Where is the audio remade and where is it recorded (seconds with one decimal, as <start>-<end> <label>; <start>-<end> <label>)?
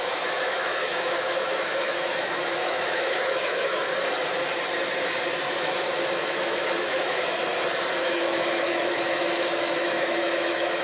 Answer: 0.0-3.9 remade; 3.9-6.1 recorded; 6.1-7.5 remade; 7.5-8.0 recorded; 8.0-10.8 remade